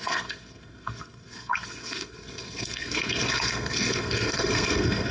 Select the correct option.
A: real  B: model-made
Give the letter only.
B